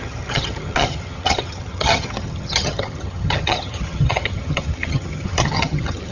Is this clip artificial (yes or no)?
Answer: yes